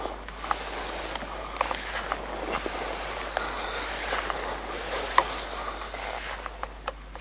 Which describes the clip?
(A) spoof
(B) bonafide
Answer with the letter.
B